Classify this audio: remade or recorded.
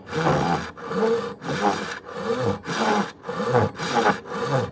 recorded